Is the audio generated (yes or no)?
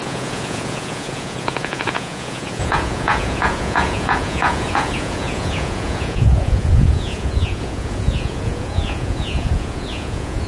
yes